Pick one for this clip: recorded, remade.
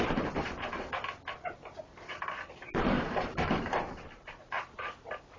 recorded